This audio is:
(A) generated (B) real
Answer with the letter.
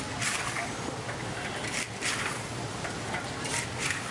B